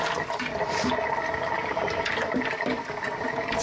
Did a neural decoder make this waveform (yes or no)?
no